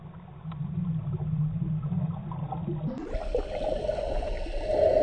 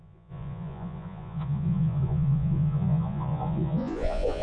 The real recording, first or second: first